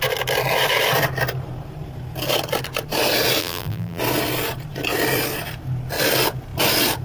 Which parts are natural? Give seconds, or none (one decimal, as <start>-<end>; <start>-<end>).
0.0-3.4; 4.0-7.0

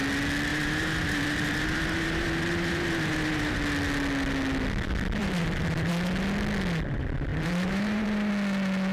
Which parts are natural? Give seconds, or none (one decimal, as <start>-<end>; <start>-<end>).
0.0-0.5; 3.6-5.2; 5.9-7.3; 8.3-8.9

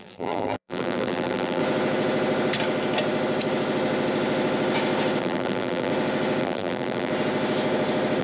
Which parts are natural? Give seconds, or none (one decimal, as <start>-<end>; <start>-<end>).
1.6-5.2; 5.9-6.4; 7.1-8.2

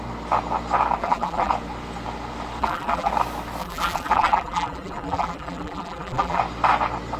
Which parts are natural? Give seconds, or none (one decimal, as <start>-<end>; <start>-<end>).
0.0-1.0; 1.5-2.6; 3.1-3.6; 6.4-7.2